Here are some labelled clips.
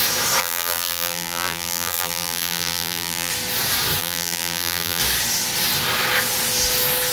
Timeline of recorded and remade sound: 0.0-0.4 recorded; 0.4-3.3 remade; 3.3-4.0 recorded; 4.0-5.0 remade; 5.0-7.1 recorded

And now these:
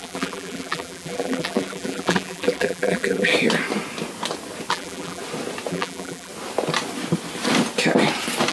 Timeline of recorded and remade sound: 0.0-3.3 remade; 3.3-4.7 recorded; 4.7-5.2 remade; 5.2-5.7 recorded; 5.7-6.3 remade; 6.3-8.5 recorded

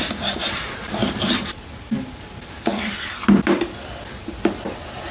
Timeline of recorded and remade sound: 0.0-1.0 recorded; 1.0-1.7 remade; 1.7-5.1 recorded

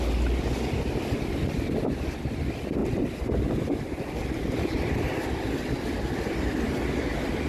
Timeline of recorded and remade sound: 0.0-7.5 recorded

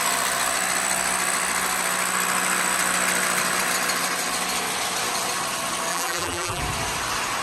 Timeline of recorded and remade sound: 0.0-5.9 recorded; 5.9-6.6 remade; 6.6-7.4 recorded

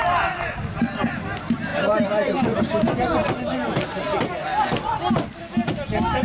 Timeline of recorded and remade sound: 0.0-1.7 recorded; 1.7-2.6 remade; 2.6-3.2 recorded; 3.2-4.9 remade; 4.9-6.2 recorded

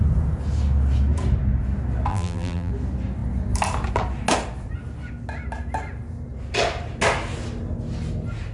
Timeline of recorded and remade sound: 0.0-2.1 recorded; 2.1-2.7 remade; 2.7-8.5 recorded

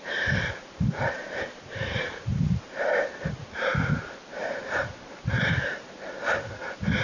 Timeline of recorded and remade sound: 0.0-3.7 remade; 3.7-4.6 recorded; 4.6-7.0 remade